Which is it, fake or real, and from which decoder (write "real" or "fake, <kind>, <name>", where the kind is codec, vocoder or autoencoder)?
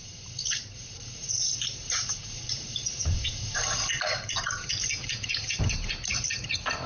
fake, vocoder, BigVGAN v2